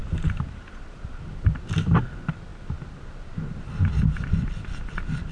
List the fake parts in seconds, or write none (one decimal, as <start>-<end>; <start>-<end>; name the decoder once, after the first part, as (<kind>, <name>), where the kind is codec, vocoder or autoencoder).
none